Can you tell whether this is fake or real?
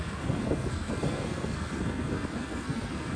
fake